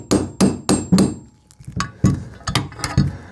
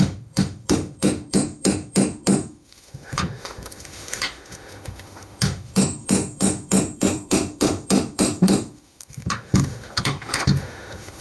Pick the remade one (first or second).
second